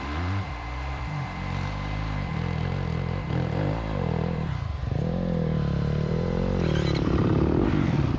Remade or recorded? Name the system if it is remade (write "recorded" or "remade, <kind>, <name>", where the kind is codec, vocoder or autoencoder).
remade, vocoder, BigVGAN v2